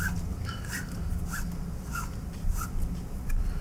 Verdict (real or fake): real